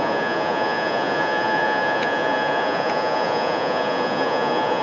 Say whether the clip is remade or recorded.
remade